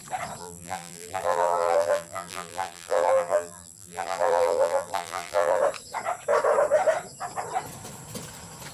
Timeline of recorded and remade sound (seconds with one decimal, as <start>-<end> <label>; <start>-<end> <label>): 0.0-0.4 recorded; 0.4-5.6 remade; 5.6-8.7 recorded